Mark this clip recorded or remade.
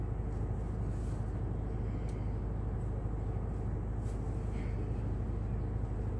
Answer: recorded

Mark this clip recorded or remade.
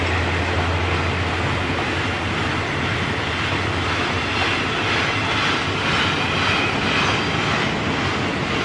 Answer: recorded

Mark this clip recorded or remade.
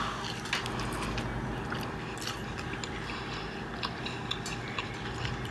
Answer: recorded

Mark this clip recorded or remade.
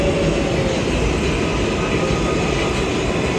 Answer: recorded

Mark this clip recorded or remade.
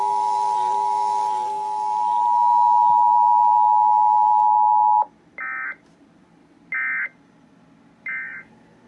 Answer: recorded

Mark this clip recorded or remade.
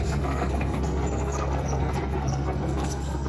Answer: remade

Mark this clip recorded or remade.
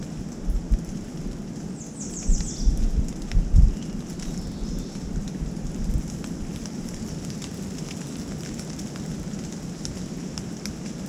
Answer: recorded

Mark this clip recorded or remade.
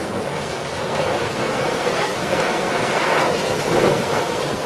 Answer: remade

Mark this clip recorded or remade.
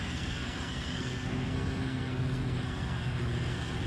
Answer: remade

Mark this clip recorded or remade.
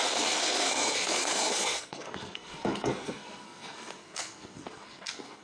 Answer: remade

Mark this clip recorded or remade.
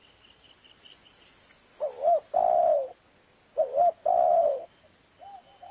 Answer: recorded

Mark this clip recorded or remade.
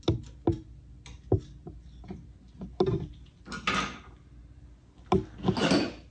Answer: recorded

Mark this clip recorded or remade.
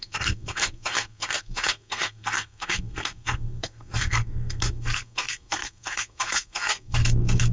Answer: remade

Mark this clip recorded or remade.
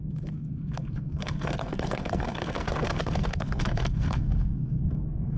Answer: remade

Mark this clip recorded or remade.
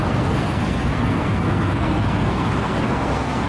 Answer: remade